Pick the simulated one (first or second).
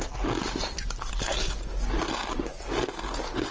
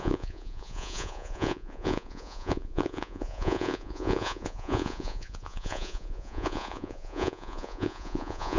second